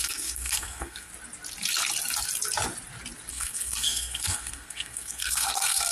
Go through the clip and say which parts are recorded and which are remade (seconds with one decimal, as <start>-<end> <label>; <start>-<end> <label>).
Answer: 0.0-1.1 remade; 1.1-3.3 recorded; 3.3-5.9 remade